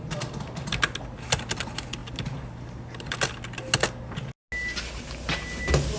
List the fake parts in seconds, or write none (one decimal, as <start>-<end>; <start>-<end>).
none